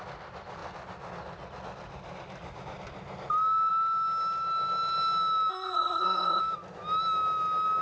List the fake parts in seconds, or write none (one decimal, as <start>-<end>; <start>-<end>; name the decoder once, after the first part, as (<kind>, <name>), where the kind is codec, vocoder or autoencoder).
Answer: 5.5-6.4 (codec, SNAC)